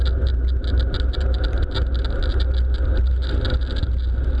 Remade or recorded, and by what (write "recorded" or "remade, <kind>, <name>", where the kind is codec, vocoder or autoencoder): recorded